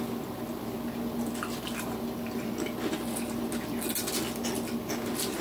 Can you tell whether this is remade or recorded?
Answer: recorded